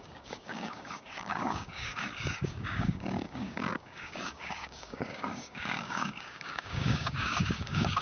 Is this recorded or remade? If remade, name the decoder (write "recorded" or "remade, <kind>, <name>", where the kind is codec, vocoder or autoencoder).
remade, codec, DAC